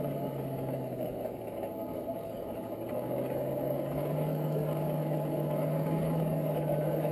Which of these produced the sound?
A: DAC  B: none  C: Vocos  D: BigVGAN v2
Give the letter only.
A